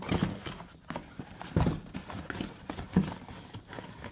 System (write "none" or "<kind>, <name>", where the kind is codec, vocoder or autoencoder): none